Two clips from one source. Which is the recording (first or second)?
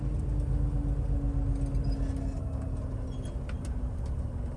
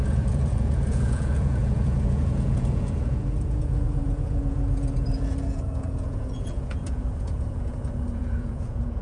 first